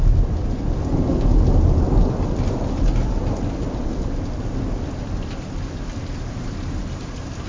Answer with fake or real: real